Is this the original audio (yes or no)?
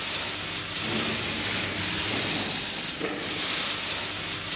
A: yes